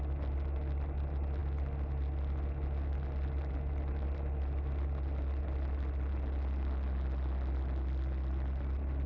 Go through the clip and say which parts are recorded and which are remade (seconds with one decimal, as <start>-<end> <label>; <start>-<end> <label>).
0.0-9.1 recorded